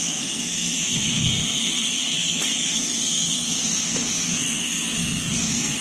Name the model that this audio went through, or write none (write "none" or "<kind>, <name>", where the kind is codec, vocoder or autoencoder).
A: codec, SNAC